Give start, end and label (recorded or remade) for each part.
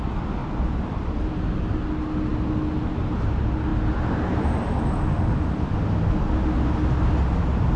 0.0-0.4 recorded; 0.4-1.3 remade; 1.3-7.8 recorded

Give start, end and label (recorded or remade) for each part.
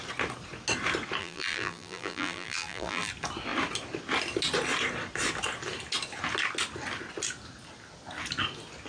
0.0-1.2 recorded; 1.2-3.1 remade; 3.1-8.9 recorded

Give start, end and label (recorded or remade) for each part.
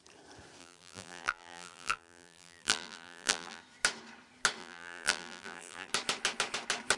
0.0-0.6 recorded; 0.6-3.6 remade; 3.6-4.6 recorded; 4.6-5.9 remade; 5.9-7.0 recorded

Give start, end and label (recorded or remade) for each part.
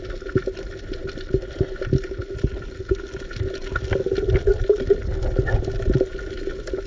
0.0-6.9 recorded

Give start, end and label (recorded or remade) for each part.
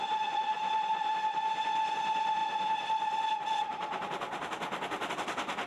0.0-5.7 recorded